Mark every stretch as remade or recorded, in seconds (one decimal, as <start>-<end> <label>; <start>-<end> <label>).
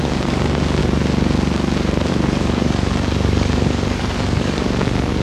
0.0-0.8 remade; 0.8-2.1 recorded; 2.1-5.2 remade